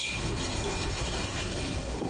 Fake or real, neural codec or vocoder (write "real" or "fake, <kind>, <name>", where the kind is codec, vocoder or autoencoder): fake, codec, SNAC